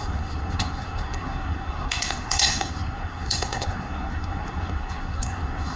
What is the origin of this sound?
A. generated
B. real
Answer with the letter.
A